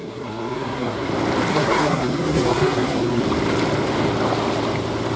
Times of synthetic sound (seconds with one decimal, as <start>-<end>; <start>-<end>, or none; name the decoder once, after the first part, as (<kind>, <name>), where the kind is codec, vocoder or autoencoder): 0.0-1.1 (codec, SNAC); 1.5-3.2

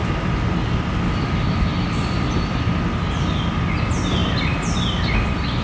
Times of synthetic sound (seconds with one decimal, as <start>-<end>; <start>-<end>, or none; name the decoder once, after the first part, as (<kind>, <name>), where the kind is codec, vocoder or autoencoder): none